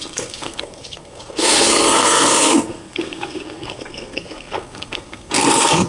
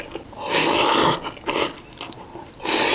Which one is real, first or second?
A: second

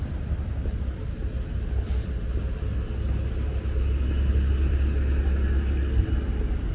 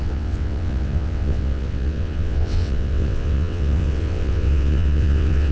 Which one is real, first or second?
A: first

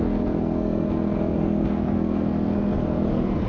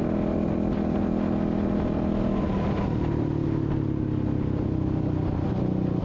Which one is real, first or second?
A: second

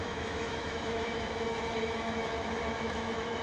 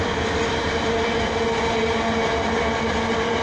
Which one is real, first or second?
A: second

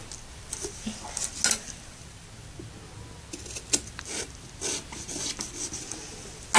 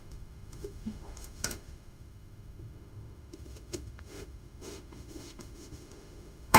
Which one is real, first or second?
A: first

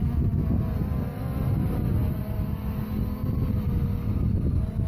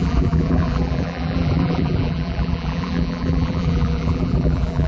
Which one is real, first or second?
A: first